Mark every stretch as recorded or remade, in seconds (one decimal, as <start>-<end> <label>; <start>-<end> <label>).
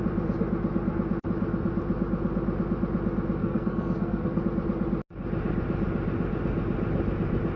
0.0-3.4 recorded; 3.4-4.4 remade; 4.4-7.6 recorded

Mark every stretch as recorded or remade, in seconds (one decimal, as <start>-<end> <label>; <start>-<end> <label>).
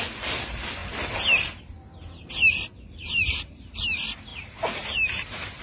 0.0-2.2 recorded; 2.2-3.7 remade; 3.7-4.3 recorded; 4.3-5.6 remade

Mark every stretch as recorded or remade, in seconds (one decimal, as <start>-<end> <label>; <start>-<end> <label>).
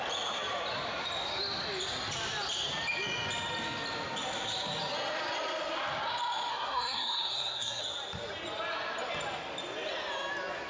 0.0-6.5 recorded; 6.5-7.8 remade; 7.8-10.7 recorded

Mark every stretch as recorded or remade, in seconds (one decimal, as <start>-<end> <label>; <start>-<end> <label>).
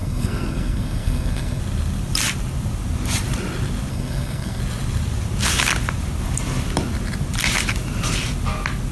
0.0-1.6 remade; 1.6-3.9 recorded; 3.9-4.6 remade; 4.6-8.9 recorded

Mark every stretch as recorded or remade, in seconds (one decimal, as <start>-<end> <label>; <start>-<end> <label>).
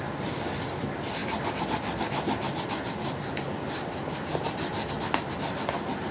0.0-6.1 recorded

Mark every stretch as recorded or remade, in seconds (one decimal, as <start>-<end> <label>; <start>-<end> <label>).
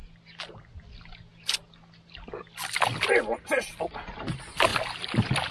0.0-5.5 recorded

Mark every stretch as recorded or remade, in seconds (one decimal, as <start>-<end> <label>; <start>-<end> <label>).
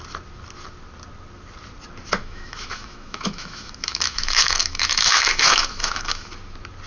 0.0-2.2 recorded; 2.2-6.3 remade; 6.3-6.9 recorded